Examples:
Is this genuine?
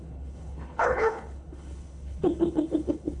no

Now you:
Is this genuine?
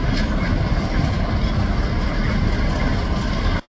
yes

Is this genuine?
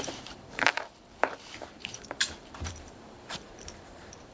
no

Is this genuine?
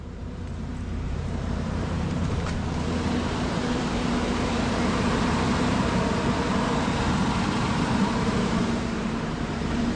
no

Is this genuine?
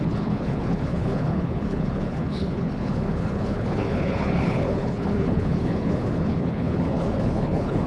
no